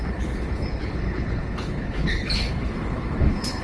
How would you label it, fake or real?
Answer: fake